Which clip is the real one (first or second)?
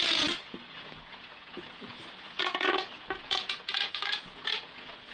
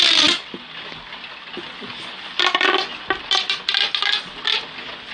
second